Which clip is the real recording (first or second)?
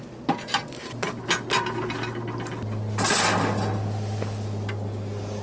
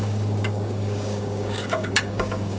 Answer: first